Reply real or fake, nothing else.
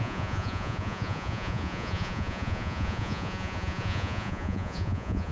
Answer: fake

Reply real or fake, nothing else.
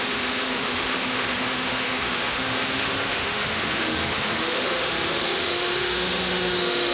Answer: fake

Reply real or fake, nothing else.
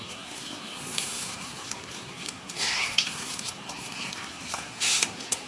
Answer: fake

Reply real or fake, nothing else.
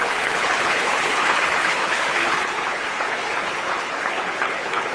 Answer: fake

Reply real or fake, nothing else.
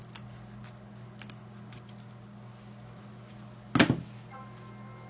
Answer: real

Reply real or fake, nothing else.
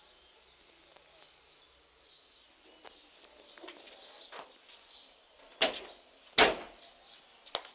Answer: real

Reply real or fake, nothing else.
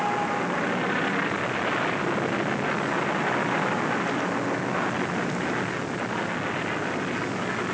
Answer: real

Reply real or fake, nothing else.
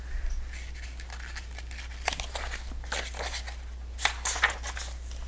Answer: real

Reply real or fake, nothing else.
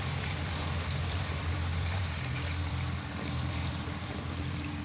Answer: fake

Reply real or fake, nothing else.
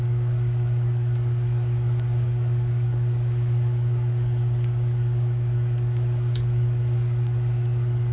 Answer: fake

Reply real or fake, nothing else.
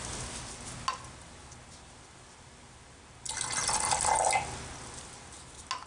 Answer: real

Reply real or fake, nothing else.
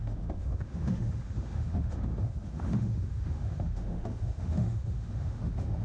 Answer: fake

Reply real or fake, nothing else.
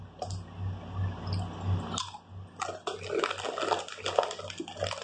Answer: real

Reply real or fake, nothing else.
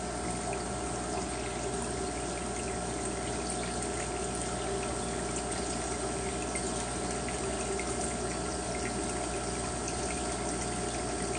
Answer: real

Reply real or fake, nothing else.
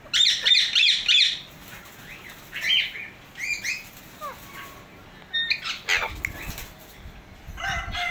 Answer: real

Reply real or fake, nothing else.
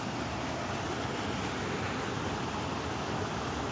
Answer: real